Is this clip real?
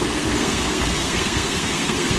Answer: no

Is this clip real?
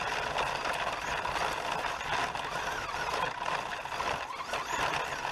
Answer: yes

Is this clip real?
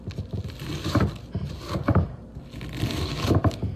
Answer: yes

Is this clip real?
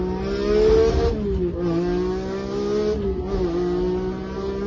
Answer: yes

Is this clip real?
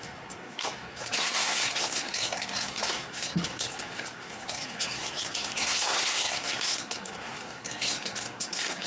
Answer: no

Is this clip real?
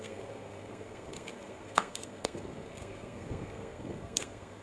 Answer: no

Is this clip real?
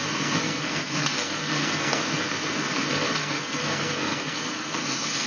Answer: no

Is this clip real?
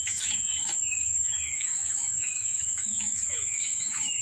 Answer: no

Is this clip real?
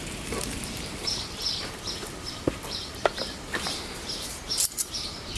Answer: no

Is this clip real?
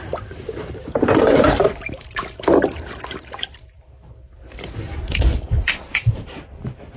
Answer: no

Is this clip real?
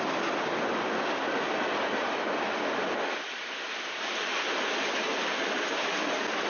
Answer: yes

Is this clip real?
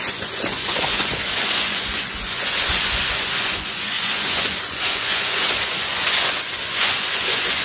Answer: no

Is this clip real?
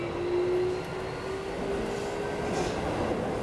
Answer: yes